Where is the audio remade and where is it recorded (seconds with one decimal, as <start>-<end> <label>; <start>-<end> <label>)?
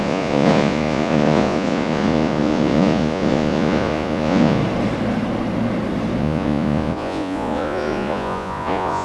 0.0-4.6 remade; 4.6-6.2 recorded; 6.2-9.0 remade